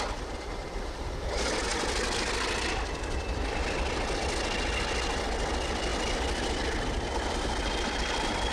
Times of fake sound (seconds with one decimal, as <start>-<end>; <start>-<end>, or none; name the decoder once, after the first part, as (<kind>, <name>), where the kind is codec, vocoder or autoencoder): none